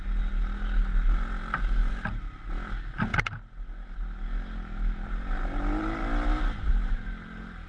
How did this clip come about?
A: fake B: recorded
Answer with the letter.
B